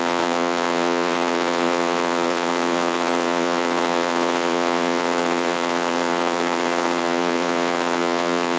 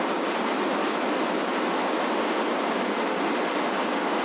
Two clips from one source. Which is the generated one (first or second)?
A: first